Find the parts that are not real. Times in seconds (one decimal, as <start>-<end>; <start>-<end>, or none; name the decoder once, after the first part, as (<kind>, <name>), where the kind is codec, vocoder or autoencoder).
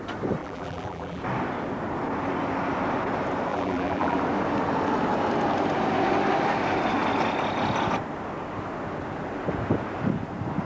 0.4-1.2 (vocoder, BigVGAN v2); 3.5-4.2